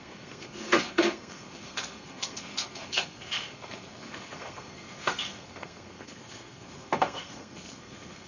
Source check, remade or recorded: remade